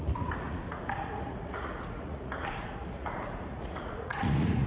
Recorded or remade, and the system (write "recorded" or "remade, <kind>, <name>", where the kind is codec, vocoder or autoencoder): remade, vocoder, Vocos